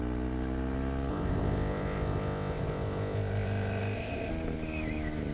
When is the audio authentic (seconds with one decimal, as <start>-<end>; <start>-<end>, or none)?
0.0-1.1; 4.3-5.3